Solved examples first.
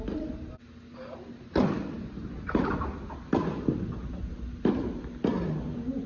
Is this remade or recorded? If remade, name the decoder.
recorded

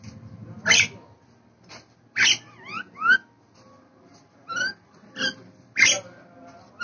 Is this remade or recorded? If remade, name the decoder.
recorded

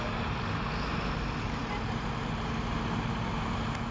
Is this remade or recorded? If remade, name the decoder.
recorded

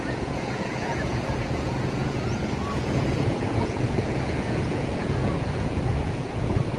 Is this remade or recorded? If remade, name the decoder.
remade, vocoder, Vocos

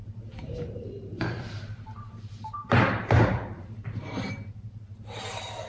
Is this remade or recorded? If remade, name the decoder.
remade, vocoder, BigVGAN v2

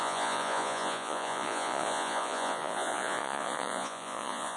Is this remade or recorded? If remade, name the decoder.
remade, vocoder, Vocos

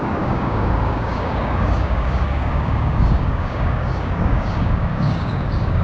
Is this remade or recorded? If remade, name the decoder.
remade, codec, DAC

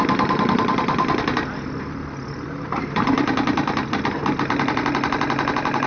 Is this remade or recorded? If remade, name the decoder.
recorded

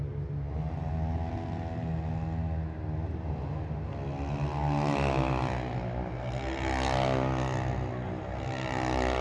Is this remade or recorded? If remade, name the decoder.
recorded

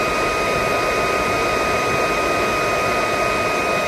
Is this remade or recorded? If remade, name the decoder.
recorded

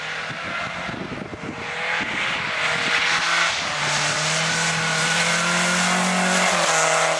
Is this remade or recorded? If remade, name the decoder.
recorded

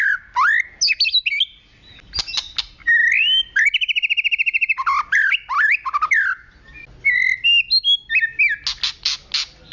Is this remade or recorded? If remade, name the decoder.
recorded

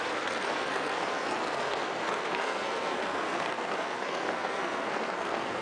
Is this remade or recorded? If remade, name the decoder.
remade, codec, SNAC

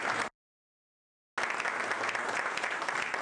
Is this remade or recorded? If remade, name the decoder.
recorded